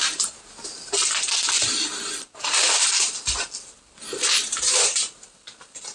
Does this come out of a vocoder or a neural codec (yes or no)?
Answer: no